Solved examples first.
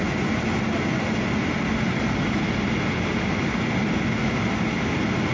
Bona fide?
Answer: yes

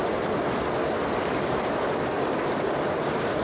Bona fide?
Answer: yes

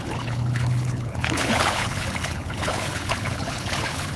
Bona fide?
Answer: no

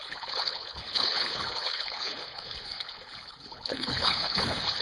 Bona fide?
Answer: no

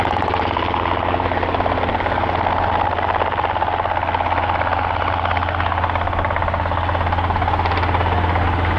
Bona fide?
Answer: yes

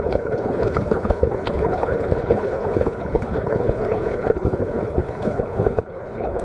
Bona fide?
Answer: no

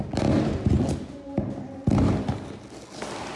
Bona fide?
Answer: yes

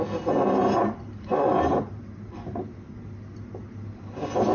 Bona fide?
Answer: yes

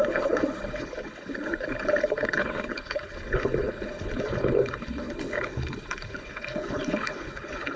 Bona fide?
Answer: no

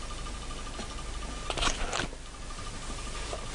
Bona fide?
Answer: yes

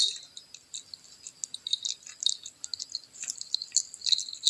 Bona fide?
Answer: yes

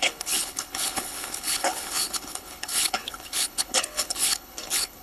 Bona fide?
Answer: no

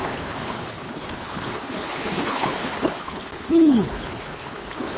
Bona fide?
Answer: no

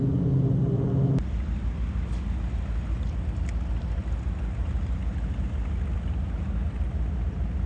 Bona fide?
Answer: yes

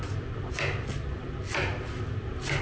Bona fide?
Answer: yes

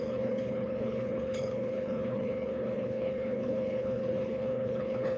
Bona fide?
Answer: no